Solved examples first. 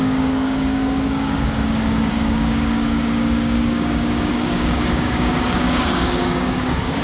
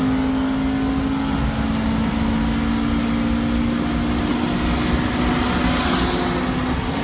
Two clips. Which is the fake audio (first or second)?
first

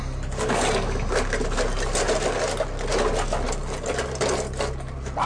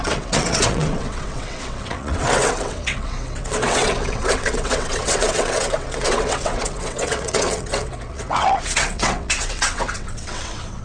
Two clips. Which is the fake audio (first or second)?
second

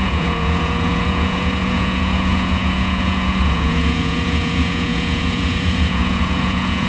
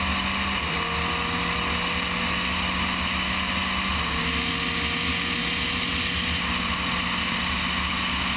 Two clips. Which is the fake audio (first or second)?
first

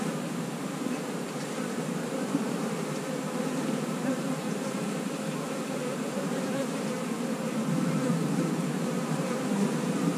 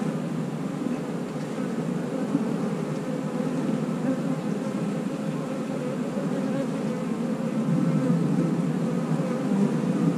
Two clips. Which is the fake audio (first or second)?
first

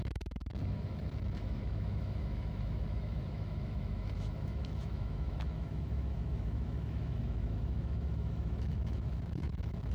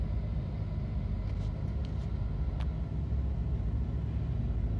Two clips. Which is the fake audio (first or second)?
first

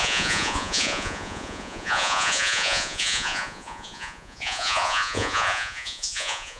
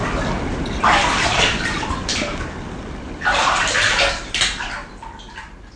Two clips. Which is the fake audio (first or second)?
first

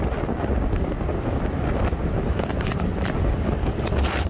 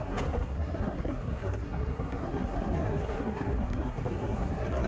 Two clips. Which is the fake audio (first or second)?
second